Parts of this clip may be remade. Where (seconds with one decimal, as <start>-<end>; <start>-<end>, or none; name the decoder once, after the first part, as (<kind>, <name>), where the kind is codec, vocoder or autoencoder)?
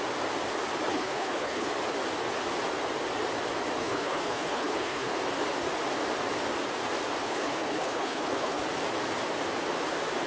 0.9-1.7 (codec, HILCodec); 3.8-5.1; 7.2-8.6